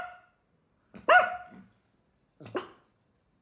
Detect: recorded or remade recorded